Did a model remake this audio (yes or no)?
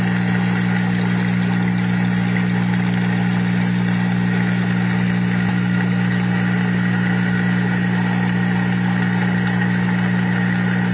no